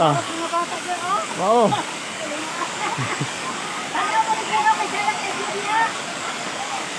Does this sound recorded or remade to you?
remade